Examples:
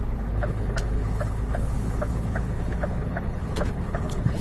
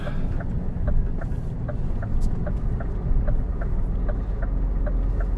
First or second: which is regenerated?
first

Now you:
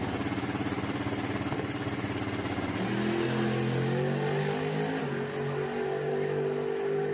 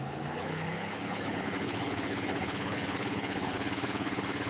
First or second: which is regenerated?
second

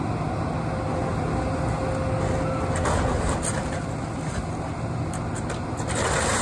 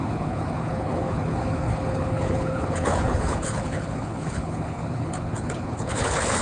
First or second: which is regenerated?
second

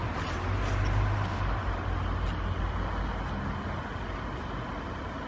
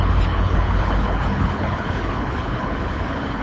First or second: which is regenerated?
second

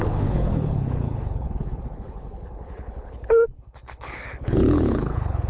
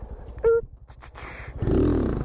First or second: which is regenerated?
first